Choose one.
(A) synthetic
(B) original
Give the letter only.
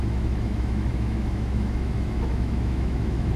A